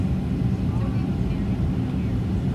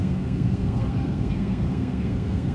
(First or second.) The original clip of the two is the first